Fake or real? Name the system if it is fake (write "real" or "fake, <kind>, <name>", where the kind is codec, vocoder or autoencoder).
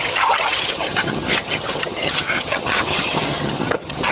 fake, vocoder, HiFi-GAN